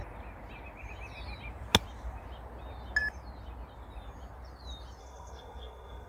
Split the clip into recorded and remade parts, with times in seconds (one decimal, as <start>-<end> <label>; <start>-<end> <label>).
0.0-5.0 recorded; 5.0-6.1 remade